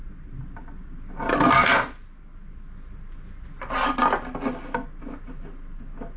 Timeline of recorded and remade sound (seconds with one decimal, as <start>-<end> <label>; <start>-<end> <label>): 0.0-6.2 recorded